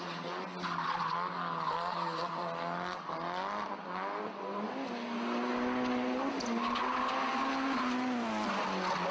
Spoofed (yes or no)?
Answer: no